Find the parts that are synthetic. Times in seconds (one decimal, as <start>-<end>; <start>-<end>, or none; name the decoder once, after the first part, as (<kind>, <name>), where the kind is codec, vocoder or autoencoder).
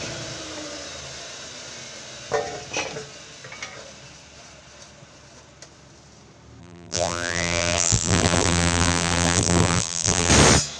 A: 6.6-10.3 (vocoder, BigVGAN v2)